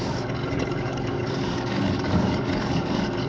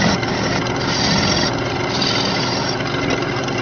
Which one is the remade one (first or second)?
first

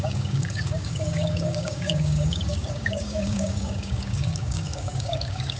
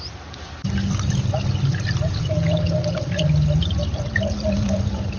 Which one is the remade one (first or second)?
first